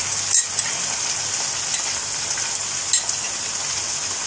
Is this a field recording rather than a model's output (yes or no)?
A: yes